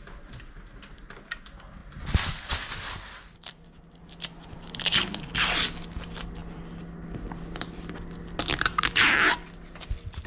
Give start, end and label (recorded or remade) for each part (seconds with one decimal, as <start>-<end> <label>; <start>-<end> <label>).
0.0-10.3 recorded